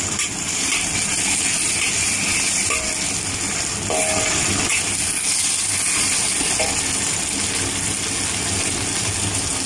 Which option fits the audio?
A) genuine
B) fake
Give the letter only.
A